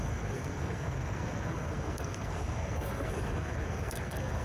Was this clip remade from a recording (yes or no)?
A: yes